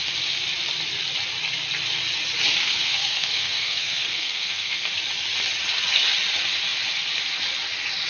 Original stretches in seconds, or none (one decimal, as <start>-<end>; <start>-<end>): 0.0-2.6; 4.9-8.1